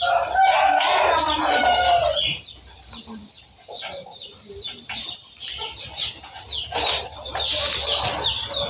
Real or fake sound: real